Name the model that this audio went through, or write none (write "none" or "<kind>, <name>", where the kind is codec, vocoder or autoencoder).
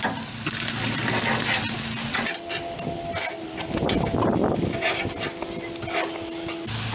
none